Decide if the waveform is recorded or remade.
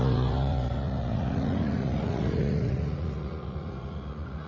remade